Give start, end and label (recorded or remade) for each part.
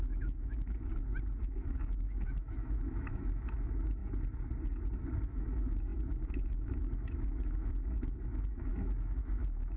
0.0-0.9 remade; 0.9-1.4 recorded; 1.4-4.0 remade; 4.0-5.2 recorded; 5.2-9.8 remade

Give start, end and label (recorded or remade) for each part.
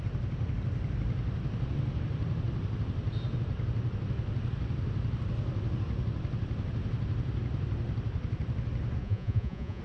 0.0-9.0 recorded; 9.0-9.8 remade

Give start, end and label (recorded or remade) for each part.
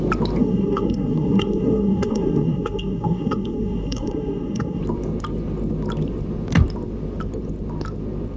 0.0-0.4 recorded; 0.4-4.8 remade; 4.8-8.4 recorded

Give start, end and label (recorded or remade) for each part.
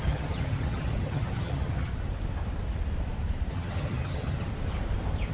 0.0-1.9 remade; 1.9-3.5 recorded; 3.5-4.5 remade; 4.5-5.3 recorded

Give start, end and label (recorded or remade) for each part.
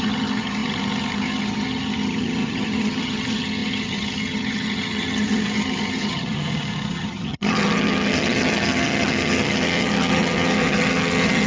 0.0-11.5 remade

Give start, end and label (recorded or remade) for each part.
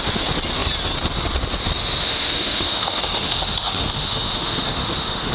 0.0-1.8 recorded; 1.8-5.3 remade